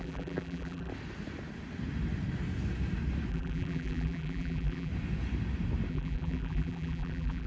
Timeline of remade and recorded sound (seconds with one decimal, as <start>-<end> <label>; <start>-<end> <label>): 0.0-0.9 remade; 0.9-3.3 recorded; 3.3-4.9 remade; 4.9-5.9 recorded; 5.9-7.5 remade